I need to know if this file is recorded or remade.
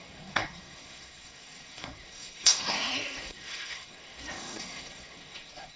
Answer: remade